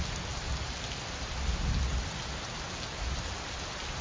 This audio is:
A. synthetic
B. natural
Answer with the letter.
B